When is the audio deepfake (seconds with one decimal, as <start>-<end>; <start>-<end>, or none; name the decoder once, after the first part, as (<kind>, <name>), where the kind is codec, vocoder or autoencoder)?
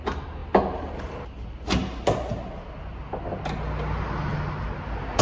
none